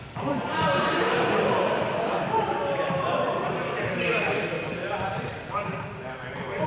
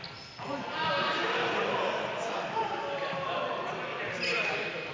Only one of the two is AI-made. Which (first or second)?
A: first